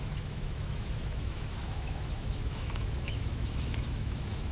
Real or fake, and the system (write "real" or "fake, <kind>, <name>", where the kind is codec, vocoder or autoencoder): fake, autoencoder, DAC-VAE